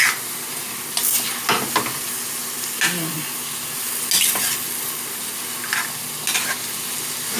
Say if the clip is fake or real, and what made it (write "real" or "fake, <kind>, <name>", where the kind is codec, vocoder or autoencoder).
real